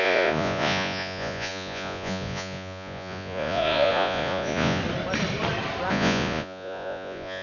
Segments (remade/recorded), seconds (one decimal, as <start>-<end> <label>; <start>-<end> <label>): 0.0-4.8 remade; 4.8-5.9 recorded; 5.9-7.4 remade